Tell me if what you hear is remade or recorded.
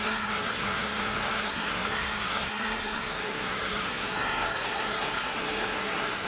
remade